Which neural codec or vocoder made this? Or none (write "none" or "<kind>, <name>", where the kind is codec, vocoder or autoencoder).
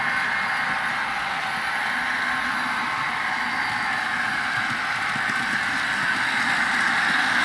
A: none